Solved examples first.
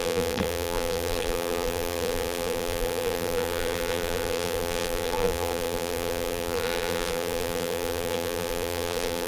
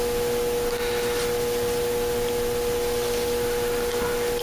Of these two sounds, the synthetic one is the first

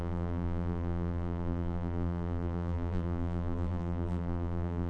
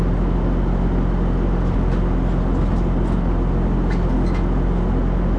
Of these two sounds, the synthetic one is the first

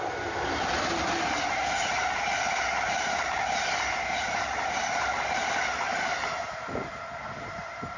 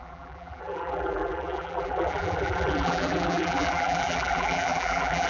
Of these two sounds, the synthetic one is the second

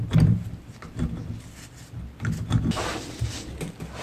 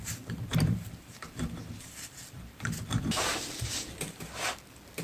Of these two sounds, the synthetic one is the second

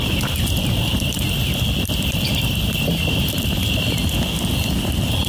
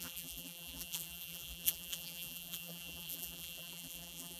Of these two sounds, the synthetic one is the second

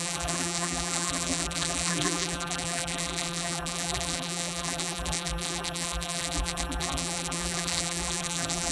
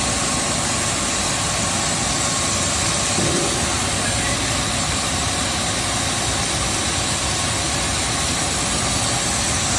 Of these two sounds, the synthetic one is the first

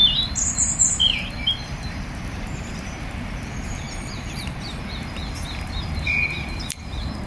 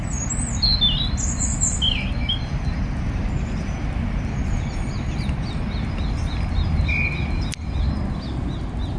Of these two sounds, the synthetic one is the first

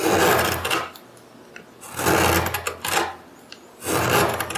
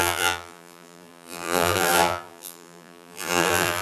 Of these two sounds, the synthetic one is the second